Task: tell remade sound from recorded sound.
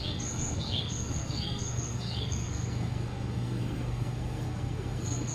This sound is remade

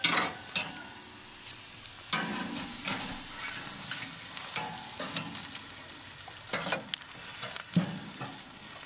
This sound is recorded